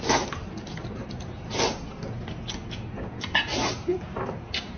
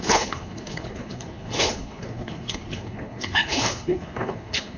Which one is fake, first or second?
second